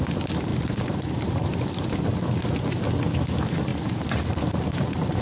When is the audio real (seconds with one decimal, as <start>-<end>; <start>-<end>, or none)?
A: 0.0-0.5; 1.9-3.7